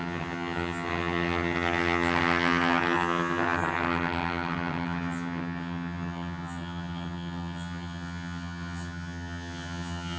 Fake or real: fake